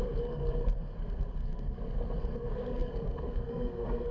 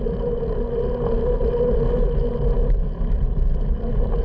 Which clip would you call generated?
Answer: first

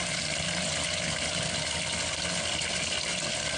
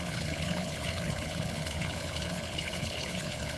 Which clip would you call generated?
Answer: second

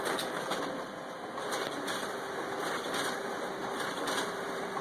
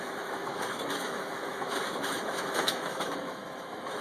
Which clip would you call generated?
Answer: second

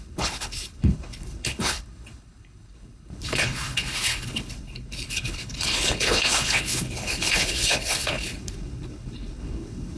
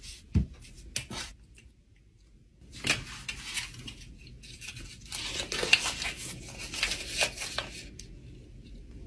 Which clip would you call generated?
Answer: first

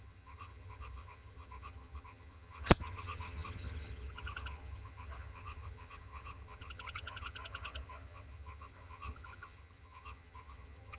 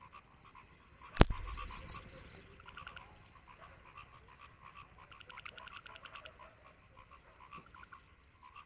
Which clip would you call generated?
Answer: first